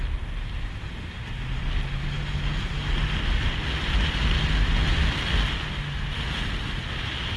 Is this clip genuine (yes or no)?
yes